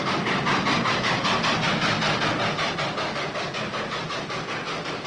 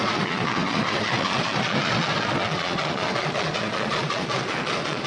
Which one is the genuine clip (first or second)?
first